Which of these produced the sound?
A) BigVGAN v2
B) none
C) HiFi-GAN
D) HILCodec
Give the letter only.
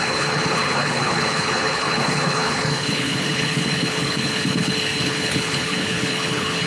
D